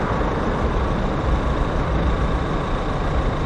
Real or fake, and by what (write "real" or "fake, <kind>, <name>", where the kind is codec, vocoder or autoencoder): real